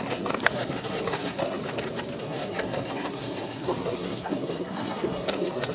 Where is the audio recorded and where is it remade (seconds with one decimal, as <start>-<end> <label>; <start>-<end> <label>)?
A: 0.0-1.6 remade; 1.6-2.2 recorded; 2.2-5.7 remade